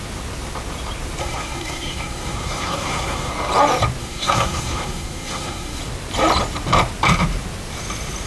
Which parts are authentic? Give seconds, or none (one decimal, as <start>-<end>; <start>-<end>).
0.0-1.2; 3.3-4.0; 5.8-8.3